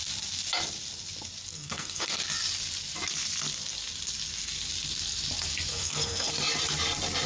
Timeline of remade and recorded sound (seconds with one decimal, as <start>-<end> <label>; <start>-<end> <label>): 0.0-1.5 recorded; 1.5-2.2 remade; 2.2-5.7 recorded; 5.7-6.3 remade; 6.3-7.3 recorded